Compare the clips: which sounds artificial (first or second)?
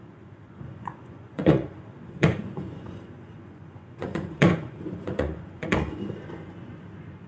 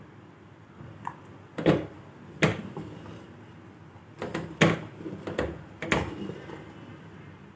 first